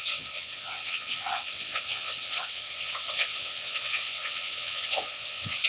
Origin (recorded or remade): remade